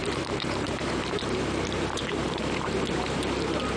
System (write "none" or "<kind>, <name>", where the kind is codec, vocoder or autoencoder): vocoder, BigVGAN v2